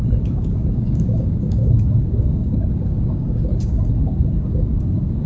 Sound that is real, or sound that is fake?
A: fake